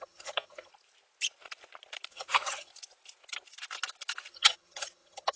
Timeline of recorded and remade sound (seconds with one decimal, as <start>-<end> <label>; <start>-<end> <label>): 0.0-0.7 remade; 0.7-2.1 recorded; 2.1-2.7 remade; 2.7-4.3 recorded; 4.3-5.4 remade